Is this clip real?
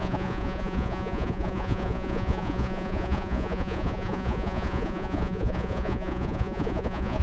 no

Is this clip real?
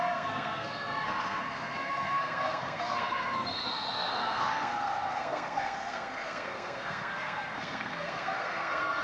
no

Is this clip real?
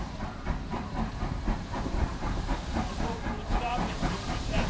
no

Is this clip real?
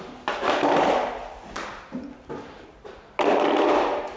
yes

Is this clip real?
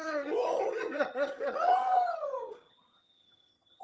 no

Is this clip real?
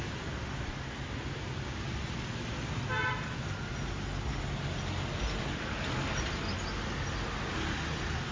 yes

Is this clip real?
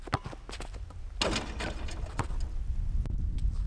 yes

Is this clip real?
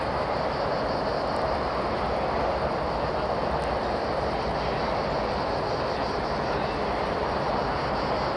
yes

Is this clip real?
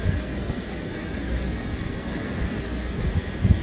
no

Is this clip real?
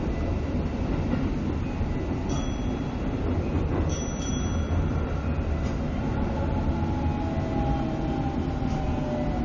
yes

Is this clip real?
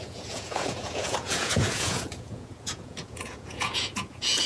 no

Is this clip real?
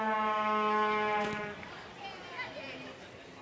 yes